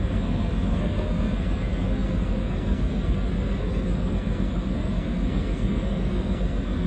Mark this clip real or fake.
fake